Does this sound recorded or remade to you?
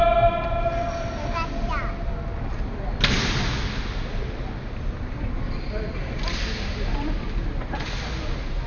recorded